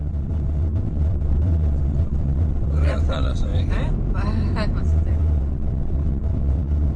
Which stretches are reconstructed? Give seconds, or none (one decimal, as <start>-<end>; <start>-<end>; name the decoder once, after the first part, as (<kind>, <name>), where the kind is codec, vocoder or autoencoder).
0.0-3.5 (vocoder, WaveNeXt); 4.8-7.0